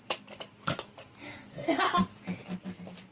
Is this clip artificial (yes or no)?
no